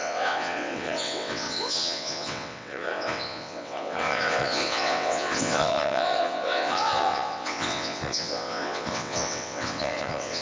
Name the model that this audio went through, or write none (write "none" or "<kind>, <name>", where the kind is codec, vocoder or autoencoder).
vocoder, WaveNeXt